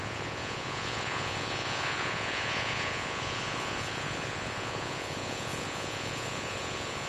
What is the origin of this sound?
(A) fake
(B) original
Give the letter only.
A